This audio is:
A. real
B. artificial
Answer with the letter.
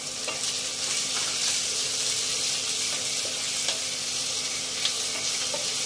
A